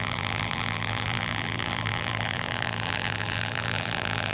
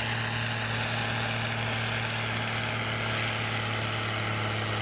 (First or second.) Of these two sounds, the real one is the second